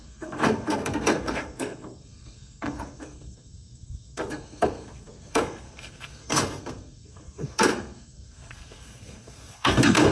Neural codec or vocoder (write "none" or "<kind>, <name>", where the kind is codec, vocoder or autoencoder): codec, SNAC